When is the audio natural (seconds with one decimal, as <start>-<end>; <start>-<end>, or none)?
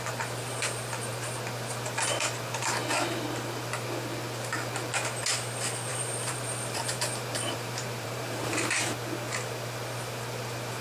0.0-5.9; 8.8-10.8